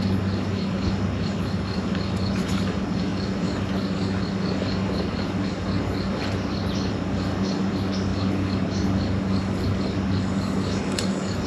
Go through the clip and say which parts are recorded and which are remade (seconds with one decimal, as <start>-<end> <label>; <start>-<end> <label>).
0.0-6.2 remade; 6.2-6.9 recorded; 6.9-11.5 remade